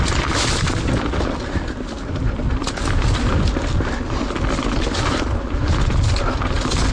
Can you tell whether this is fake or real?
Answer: real